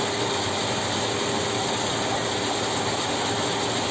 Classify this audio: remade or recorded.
recorded